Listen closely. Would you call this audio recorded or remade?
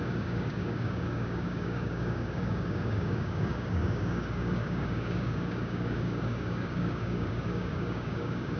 remade